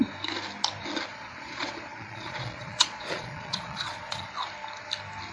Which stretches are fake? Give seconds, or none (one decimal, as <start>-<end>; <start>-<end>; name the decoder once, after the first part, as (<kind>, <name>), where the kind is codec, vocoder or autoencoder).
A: 1.1-4.3 (vocoder, Vocos)